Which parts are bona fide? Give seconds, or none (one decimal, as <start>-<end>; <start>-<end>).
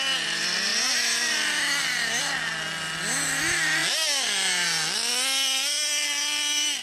0.0-6.8